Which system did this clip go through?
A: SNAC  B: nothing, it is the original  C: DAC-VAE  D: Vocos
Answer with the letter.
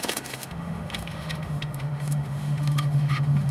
C